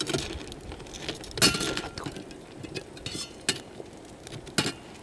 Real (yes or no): yes